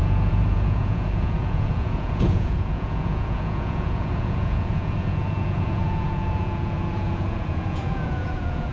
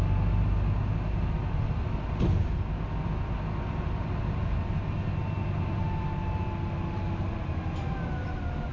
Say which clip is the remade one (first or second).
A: first